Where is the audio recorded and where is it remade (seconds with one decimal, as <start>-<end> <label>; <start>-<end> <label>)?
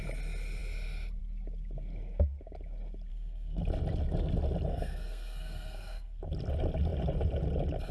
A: 0.0-3.1 recorded; 3.1-3.6 remade; 3.6-4.7 recorded; 4.7-6.2 remade; 6.2-7.9 recorded